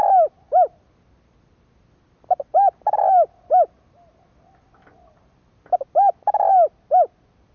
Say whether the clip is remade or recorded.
recorded